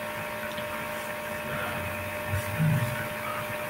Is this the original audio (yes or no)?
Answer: yes